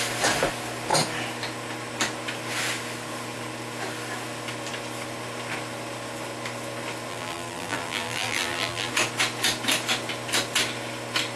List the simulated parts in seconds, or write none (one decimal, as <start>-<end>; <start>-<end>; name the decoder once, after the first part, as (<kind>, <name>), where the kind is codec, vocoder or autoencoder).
7.1-8.9 (vocoder, BigVGAN v2)